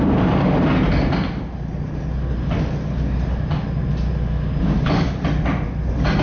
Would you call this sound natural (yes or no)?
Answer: yes